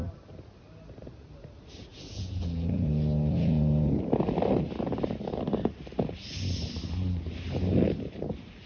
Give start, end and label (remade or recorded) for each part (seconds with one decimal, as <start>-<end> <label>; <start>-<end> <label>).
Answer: 0.0-1.9 recorded; 1.9-4.0 remade; 4.0-8.7 recorded